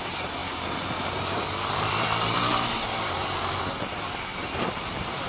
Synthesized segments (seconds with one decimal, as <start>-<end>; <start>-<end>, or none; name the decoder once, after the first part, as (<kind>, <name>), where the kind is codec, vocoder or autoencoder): 0.4-3.6 (vocoder, BigVGAN v2); 4.3-5.3